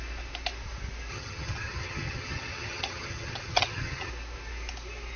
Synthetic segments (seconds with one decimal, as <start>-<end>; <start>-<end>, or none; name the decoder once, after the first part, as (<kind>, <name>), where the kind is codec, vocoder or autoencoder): 1.1-4.1 (vocoder, HiFi-GAN)